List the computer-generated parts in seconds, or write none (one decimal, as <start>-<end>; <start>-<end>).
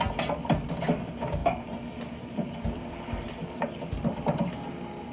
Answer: 1.4-4.5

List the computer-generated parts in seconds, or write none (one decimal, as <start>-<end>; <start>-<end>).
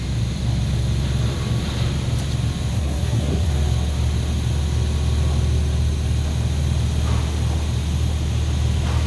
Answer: 2.7-3.5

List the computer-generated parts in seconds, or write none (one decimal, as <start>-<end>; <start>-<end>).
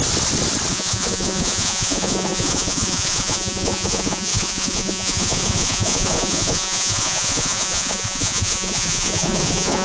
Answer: 0.7-9.8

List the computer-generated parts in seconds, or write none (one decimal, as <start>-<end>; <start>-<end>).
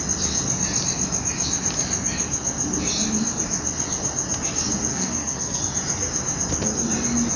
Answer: 4.9-5.6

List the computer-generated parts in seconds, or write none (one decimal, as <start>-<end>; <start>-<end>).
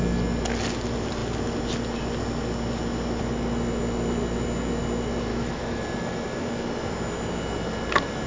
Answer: 5.3-5.8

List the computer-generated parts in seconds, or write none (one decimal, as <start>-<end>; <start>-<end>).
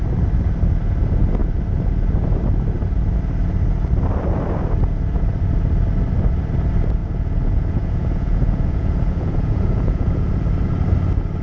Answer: 7.0-10.4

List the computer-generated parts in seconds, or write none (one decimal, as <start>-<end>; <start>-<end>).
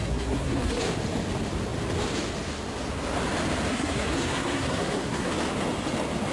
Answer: 0.0-0.8; 3.7-5.3